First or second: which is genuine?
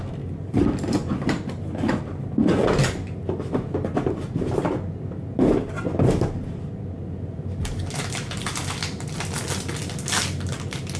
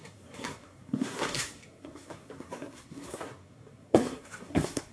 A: first